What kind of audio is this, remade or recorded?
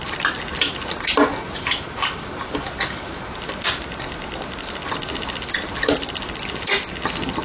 recorded